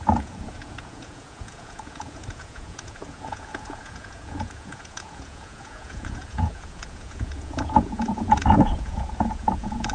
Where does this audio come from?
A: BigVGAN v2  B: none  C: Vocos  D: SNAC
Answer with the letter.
C